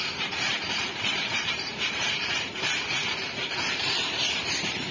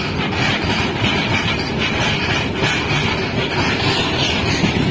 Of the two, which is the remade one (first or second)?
first